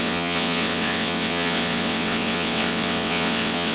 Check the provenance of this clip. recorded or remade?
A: remade